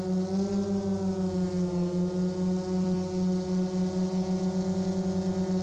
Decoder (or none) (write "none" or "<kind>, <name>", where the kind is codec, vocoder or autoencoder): none